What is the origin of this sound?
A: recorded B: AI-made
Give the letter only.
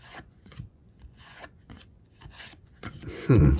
B